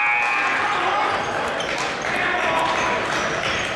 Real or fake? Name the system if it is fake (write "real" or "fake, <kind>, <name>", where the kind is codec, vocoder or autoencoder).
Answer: real